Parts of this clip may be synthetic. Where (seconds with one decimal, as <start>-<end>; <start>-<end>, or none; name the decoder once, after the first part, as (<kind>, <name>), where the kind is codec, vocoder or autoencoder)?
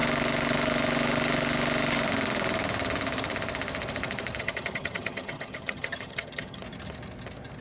4.4-6.6 (vocoder, HiFi-GAN)